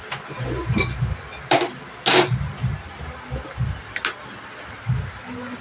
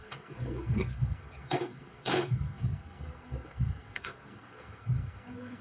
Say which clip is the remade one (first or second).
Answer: second